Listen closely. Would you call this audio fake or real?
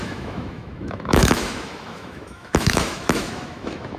fake